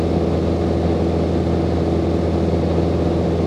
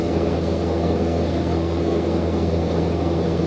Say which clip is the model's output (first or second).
second